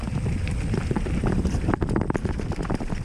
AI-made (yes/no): yes